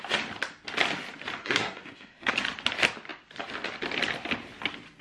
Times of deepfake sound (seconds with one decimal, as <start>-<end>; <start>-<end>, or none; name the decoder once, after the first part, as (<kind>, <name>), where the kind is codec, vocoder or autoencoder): 1.4-2.3 (codec, SNAC)